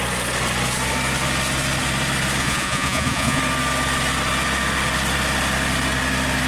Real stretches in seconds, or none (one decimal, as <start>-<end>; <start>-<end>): 0.0-2.4; 3.4-6.5